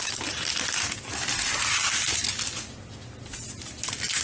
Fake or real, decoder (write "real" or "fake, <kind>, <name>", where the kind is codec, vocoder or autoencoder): real